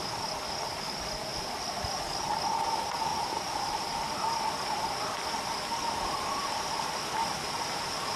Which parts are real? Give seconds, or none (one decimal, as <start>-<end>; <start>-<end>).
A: 0.0-1.3; 2.0-3.1; 4.1-8.2